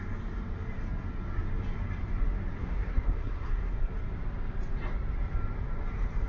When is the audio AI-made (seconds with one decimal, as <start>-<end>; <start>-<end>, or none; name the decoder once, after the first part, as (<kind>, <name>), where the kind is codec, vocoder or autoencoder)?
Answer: 2.6-3.9 (codec, SNAC)